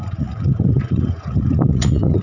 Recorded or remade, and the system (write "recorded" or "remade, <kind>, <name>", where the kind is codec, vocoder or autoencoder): remade, vocoder, Vocos